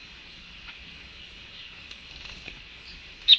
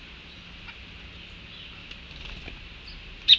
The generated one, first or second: first